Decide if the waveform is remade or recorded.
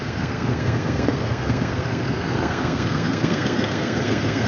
remade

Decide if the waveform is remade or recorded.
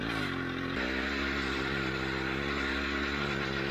recorded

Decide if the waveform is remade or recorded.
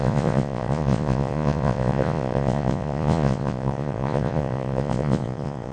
remade